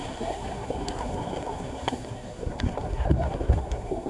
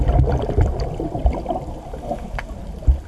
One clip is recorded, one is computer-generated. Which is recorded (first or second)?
second